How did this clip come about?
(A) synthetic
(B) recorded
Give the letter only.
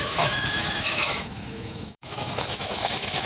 A